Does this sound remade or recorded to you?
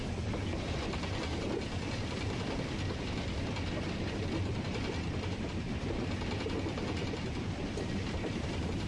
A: recorded